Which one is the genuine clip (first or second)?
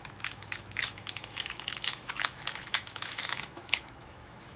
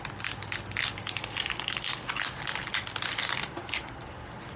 second